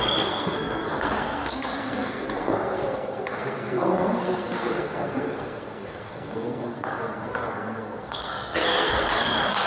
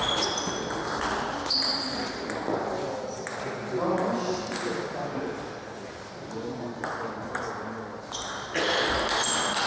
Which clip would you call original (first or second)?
second